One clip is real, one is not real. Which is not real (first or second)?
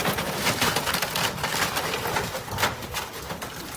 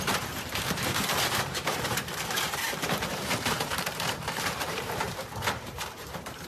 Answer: second